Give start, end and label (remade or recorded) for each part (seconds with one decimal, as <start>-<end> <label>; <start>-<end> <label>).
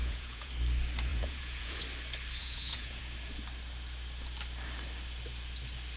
0.0-0.5 remade; 0.5-1.1 recorded; 1.1-1.8 remade; 1.8-2.4 recorded; 2.4-3.0 remade; 3.0-6.0 recorded